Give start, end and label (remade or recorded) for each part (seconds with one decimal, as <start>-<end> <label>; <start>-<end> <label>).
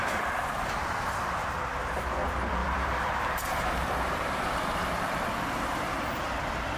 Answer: 0.0-6.8 remade